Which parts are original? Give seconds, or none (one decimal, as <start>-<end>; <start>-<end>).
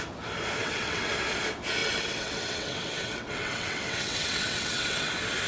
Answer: 0.0-0.6; 1.1-1.8; 5.1-5.5